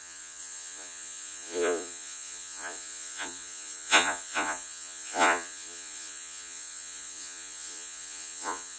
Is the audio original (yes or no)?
no